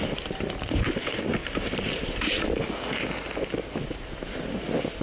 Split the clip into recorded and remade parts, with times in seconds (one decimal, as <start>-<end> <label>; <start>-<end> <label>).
0.0-1.4 recorded; 1.4-2.6 remade; 2.6-5.0 recorded